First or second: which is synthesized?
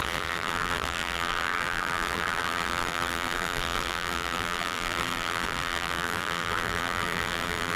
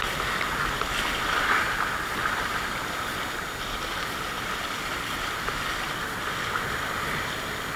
first